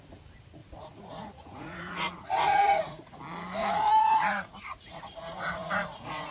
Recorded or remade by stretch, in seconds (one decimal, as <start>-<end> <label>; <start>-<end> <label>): 0.0-0.6 recorded; 0.6-3.2 remade; 3.2-3.6 recorded; 3.6-6.3 remade